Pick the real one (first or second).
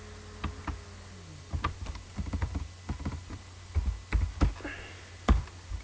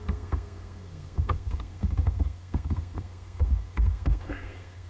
first